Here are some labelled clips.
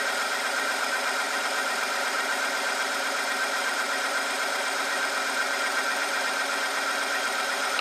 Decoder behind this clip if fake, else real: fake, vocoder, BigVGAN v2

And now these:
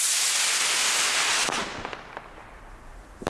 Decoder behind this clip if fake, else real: real